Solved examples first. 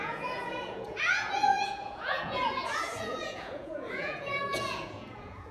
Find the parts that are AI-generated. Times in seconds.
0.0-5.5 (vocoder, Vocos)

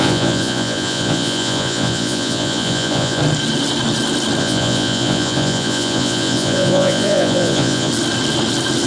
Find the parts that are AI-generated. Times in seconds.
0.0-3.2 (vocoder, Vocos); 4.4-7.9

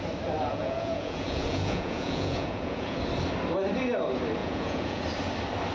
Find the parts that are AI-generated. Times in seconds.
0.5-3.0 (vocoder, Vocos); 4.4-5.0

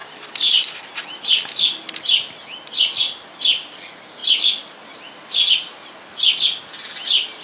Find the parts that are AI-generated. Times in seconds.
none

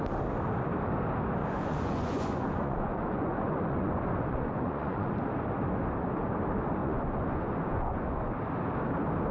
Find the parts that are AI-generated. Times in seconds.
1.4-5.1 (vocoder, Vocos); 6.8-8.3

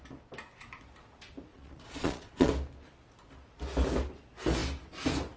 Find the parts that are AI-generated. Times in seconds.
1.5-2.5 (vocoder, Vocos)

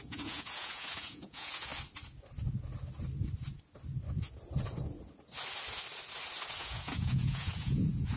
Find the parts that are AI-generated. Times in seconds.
0.0-1.7 (vocoder, Vocos); 6.6-8.2